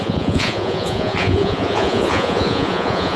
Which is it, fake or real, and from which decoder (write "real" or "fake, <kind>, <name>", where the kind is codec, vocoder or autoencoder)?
fake, vocoder, Vocos